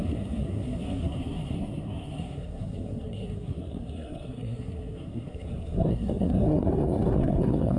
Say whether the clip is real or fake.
fake